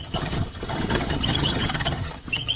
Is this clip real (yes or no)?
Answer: no